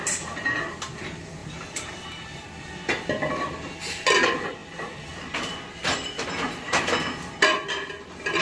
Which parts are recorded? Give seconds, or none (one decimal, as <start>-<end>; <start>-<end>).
0.6-1.4; 2.6-4.6